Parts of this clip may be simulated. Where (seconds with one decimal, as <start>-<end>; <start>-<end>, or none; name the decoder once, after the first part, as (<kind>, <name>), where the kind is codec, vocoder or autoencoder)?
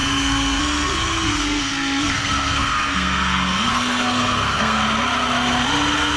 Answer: 0.0-4.8 (codec, SNAC)